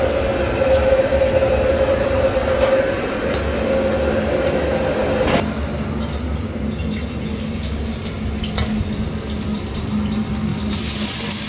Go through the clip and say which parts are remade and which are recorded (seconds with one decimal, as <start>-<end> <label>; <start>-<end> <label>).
0.0-11.5 recorded